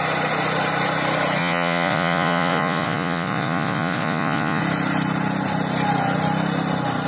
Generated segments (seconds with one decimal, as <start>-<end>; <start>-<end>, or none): 1.4-4.6